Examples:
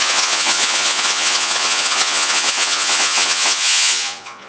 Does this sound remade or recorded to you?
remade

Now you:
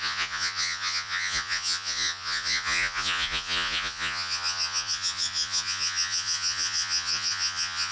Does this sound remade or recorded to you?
remade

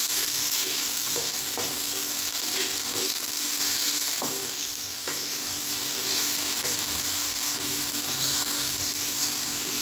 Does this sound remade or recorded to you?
remade